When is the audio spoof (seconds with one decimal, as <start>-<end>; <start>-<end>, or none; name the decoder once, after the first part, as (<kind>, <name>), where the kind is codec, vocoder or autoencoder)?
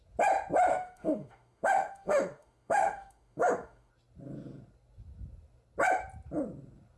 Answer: 0.7-3.9 (autoencoder, DAC-VAE)